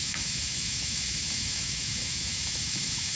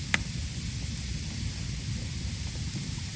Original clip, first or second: second